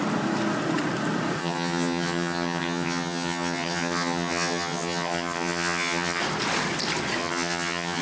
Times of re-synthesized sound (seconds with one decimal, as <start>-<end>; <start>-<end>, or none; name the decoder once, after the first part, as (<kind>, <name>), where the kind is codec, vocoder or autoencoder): 1.4-6.2 (vocoder, HiFi-GAN); 7.2-8.0